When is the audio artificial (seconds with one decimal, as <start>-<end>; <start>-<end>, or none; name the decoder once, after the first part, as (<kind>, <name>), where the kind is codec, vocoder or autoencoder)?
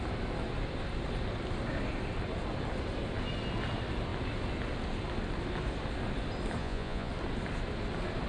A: 6.6-7.1 (vocoder, Vocos)